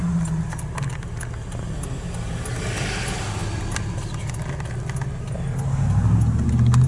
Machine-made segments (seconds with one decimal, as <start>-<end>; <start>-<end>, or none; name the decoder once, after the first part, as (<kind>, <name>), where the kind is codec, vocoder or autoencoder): none